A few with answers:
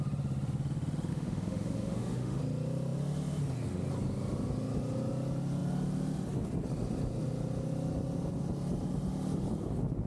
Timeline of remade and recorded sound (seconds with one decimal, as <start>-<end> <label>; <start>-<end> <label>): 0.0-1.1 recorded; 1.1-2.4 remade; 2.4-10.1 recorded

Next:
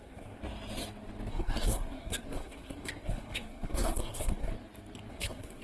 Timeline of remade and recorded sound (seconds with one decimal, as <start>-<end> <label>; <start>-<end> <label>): 0.0-0.4 remade; 0.4-1.3 recorded; 1.3-4.5 remade; 4.5-5.1 recorded; 5.1-5.6 remade

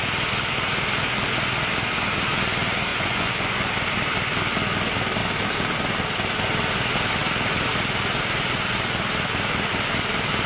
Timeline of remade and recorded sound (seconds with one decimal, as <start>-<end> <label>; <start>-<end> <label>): 0.0-2.9 recorded; 2.9-3.7 remade; 3.7-10.5 recorded

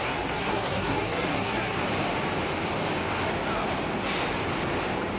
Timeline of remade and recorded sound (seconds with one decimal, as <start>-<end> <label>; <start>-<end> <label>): 0.0-1.8 remade; 1.8-5.2 recorded